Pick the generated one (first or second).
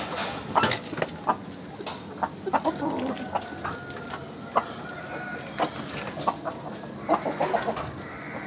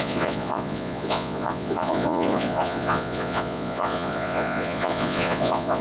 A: second